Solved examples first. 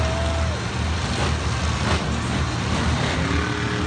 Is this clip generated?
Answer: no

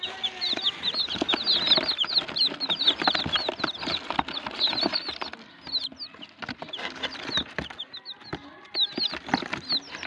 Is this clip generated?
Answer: no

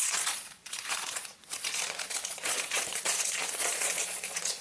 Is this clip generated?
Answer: yes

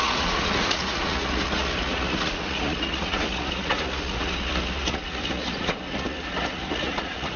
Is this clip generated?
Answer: yes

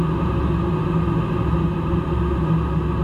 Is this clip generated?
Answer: no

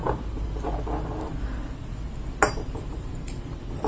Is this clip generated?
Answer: no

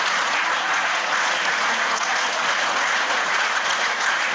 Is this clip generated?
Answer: yes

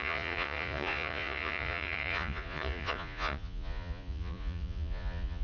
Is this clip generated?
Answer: yes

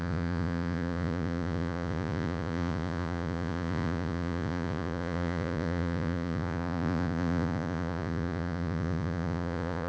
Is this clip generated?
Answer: yes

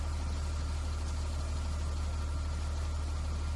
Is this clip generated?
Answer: no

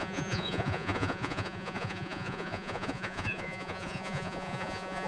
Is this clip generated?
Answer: yes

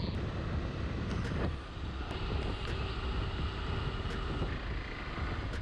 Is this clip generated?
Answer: no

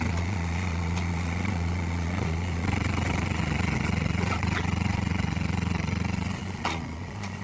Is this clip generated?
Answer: yes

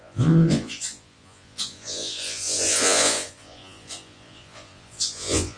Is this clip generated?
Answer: yes